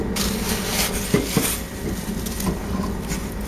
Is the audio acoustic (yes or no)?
yes